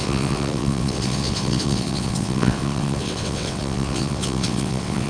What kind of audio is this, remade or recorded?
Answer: remade